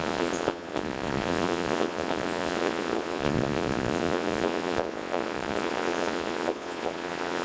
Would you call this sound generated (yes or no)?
yes